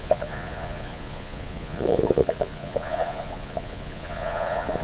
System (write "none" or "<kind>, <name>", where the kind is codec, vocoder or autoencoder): vocoder, Vocos